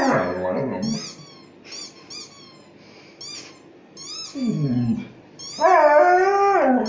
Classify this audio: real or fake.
real